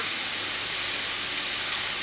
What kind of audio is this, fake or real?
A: real